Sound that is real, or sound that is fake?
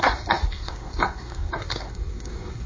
fake